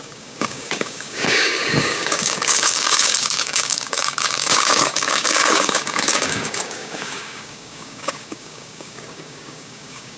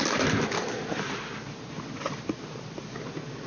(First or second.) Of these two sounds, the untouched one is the second